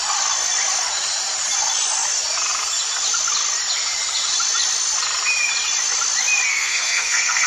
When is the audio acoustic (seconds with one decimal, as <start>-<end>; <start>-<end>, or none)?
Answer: 0.0-6.5